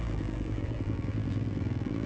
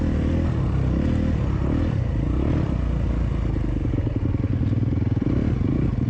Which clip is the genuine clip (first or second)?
second